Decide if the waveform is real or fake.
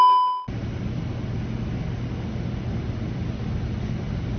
real